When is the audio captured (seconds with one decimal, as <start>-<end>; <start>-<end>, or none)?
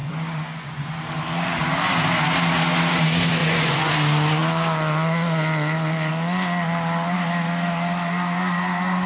1.0-3.4; 3.9-9.1